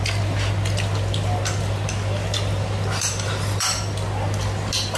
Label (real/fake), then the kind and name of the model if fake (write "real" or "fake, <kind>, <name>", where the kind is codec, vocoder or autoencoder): real